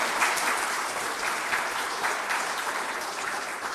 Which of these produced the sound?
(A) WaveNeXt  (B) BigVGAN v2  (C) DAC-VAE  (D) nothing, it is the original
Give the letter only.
B